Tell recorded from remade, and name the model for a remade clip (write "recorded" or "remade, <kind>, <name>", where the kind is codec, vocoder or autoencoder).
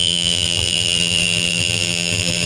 remade, vocoder, BigVGAN v2